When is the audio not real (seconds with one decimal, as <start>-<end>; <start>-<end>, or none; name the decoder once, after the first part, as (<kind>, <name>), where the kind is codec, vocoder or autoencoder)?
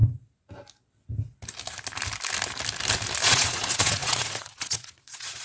3.2-5.4 (vocoder, Vocos)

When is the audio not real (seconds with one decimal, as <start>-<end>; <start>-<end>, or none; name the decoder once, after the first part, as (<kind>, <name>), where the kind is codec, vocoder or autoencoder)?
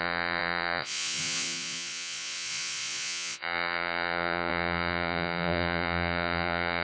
0.0-6.8 (vocoder, Vocos)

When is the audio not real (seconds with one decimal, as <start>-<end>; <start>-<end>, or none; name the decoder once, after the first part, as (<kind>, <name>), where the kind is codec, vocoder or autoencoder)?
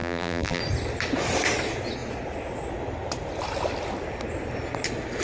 0.0-0.6 (vocoder, BigVGAN v2)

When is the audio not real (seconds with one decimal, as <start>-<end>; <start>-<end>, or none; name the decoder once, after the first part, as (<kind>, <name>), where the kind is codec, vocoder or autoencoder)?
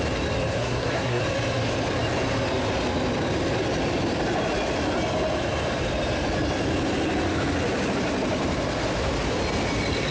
0.5-1.2 (codec, SNAC)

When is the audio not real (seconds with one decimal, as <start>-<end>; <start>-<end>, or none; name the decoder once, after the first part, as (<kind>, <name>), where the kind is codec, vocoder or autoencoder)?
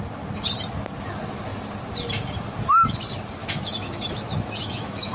3.4-5.1 (autoencoder, DAC-VAE)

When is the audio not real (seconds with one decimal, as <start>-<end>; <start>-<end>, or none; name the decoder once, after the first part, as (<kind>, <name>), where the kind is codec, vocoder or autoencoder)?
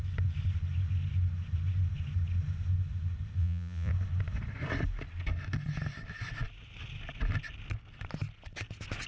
3.4-3.9 (vocoder, Vocos)